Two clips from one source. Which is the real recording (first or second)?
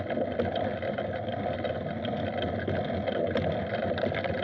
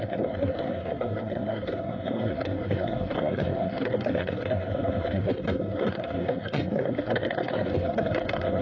first